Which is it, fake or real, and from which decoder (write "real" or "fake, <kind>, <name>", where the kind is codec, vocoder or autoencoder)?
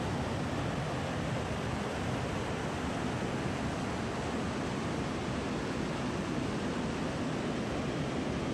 real